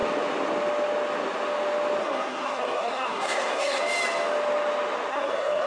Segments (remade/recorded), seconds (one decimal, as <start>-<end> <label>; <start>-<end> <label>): 0.0-2.0 recorded; 2.0-3.8 remade; 3.8-5.1 recorded; 5.1-5.7 remade